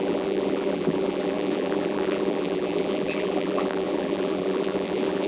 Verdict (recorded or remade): remade